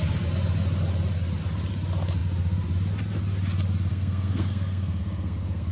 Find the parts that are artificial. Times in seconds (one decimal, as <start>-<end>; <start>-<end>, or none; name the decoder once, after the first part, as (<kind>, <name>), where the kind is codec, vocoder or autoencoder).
3.9-5.7 (codec, SNAC)